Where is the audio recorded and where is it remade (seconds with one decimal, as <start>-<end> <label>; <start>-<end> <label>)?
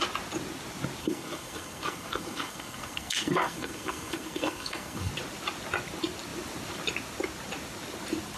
0.0-1.0 recorded; 1.0-5.1 remade; 5.1-8.4 recorded